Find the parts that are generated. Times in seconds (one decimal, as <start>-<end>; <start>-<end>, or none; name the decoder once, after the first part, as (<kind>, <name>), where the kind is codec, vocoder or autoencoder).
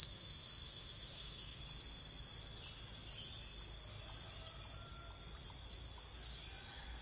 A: 0.0-1.6 (autoencoder, DAC-VAE)